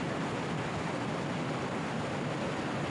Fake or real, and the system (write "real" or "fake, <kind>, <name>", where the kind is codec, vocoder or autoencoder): real